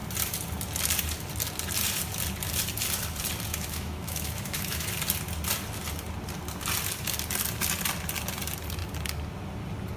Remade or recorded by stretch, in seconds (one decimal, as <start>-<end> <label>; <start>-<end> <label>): 0.0-3.5 recorded; 3.5-4.9 remade; 4.9-10.0 recorded